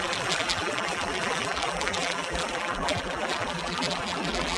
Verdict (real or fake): fake